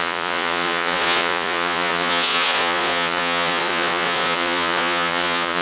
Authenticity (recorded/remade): remade